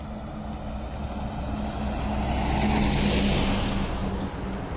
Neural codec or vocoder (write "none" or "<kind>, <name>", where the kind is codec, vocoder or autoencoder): none